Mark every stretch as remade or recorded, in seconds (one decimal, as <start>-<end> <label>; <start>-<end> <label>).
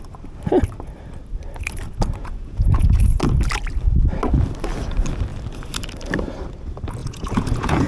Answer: 0.0-2.2 recorded; 2.2-3.2 remade; 3.2-7.0 recorded; 7.0-7.9 remade